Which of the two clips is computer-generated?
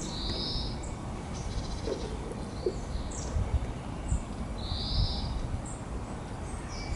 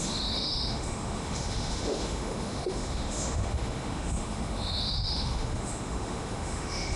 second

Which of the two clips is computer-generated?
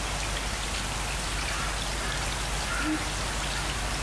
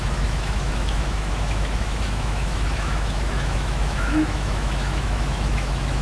second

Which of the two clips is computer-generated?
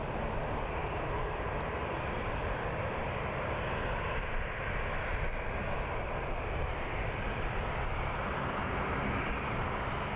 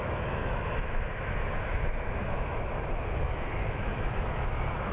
second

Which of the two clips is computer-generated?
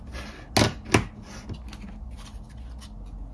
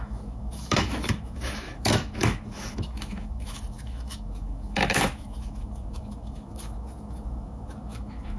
second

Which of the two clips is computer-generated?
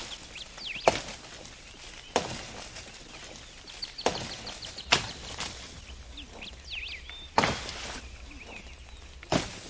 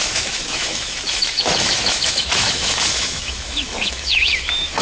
second